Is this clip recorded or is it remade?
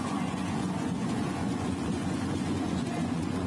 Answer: remade